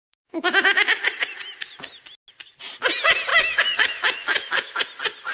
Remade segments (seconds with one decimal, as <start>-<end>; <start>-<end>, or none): 0.0-1.0; 3.3-4.8